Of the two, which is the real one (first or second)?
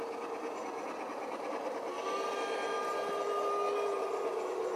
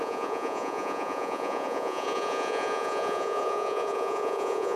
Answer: first